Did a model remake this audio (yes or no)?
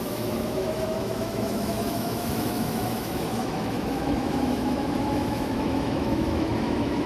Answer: yes